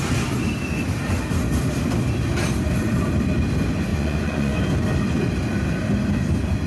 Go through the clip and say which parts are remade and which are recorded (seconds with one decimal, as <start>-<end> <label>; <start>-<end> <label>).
0.0-3.9 recorded; 3.9-4.6 remade; 4.6-6.7 recorded